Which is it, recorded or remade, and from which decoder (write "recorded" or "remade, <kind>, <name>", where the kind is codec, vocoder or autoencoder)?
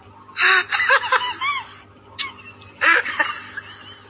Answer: recorded